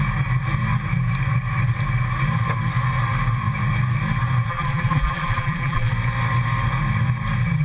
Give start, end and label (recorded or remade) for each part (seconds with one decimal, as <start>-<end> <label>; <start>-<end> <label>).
0.0-4.5 recorded; 4.5-5.9 remade; 5.9-7.6 recorded